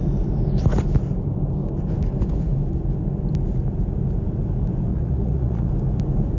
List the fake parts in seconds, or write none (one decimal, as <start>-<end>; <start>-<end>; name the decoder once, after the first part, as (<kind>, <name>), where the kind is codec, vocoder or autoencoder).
4.9-5.7 (vocoder, Vocos)